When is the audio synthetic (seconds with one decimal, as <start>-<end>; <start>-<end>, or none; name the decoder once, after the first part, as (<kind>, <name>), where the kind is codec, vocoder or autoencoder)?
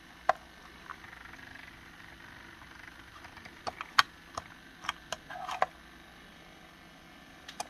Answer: none